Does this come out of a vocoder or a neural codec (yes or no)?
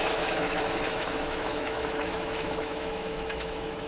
yes